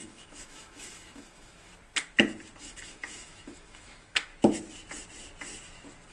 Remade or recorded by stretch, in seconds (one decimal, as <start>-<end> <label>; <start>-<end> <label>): 0.0-1.7 remade; 1.7-2.6 recorded; 2.6-4.3 remade; 4.3-6.1 recorded